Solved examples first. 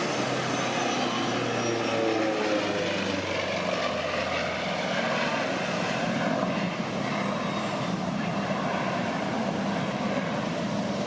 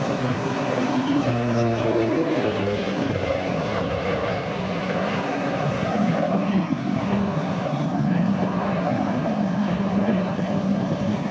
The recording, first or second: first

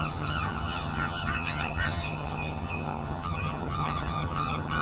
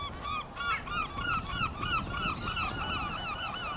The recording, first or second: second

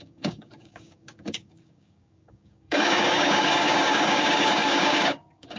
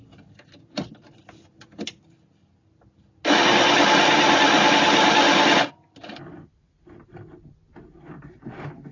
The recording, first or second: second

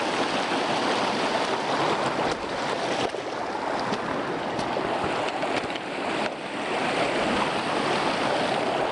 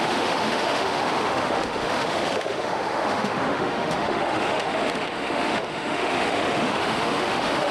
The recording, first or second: first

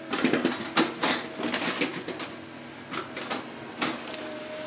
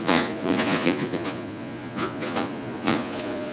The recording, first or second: first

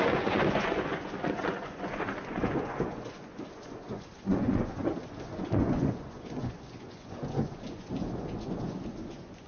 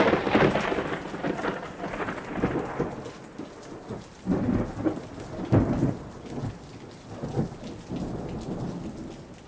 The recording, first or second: second